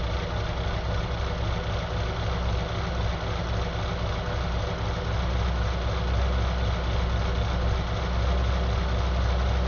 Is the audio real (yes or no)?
yes